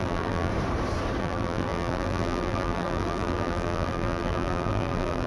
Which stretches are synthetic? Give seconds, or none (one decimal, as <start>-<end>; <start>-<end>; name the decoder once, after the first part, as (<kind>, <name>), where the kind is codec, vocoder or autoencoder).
0.0-0.5 (vocoder, BigVGAN v2); 1.2-5.3